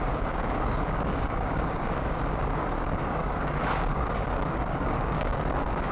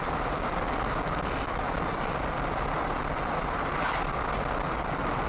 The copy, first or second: first